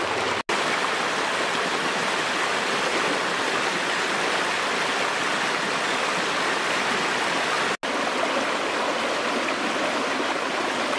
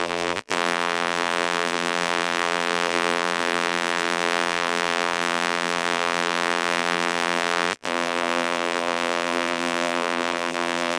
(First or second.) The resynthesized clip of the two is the second